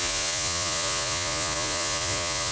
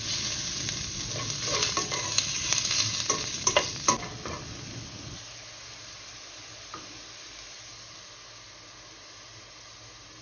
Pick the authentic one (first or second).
second